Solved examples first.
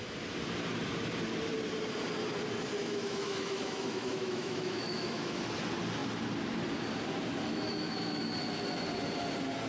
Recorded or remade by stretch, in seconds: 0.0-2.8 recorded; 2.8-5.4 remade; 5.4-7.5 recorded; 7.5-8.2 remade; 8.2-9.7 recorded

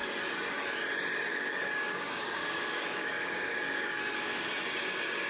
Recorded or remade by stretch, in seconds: 0.0-1.3 recorded; 1.3-4.5 remade; 4.5-5.3 recorded

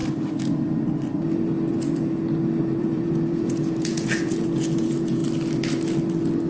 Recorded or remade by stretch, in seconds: 0.0-2.8 recorded; 2.8-5.2 remade; 5.2-6.5 recorded

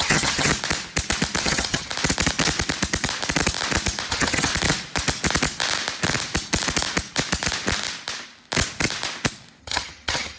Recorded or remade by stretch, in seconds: 0.0-0.5 remade; 0.5-1.4 recorded; 1.4-1.9 remade; 1.9-4.1 recorded; 4.1-4.5 remade; 4.5-9.6 recorded; 9.6-10.4 remade

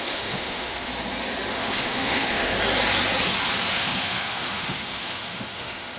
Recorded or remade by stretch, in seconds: 0.0-0.9 remade; 0.9-1.5 recorded; 1.5-2.5 remade; 2.5-3.7 recorded; 3.7-6.0 remade

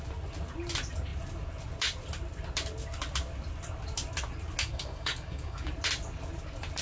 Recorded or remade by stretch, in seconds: 0.0-4.6 recorded; 4.6-5.7 remade; 5.7-6.8 recorded

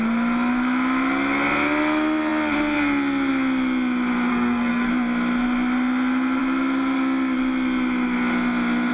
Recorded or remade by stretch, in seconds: 0.0-4.3 recorded; 4.3-4.9 remade; 4.9-8.9 recorded